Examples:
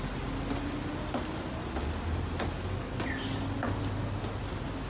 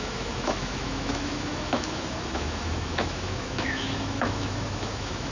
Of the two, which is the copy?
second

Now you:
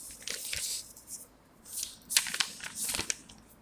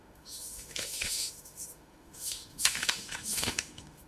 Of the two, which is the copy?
second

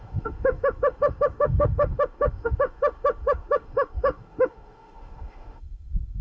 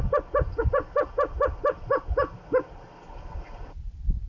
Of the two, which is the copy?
first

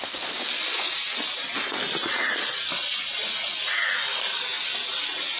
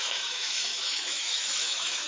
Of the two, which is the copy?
second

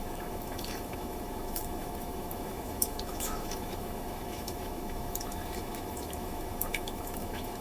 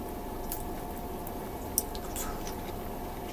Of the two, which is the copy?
first